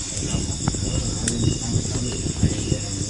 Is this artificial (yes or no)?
no